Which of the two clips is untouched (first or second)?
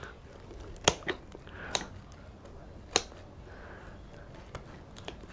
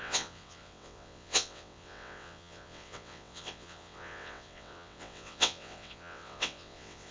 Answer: first